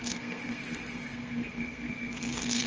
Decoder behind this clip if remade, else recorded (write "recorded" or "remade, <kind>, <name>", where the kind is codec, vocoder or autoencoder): remade, codec, SNAC